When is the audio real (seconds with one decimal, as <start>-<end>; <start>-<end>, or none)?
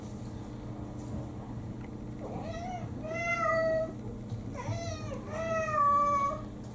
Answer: 0.0-6.7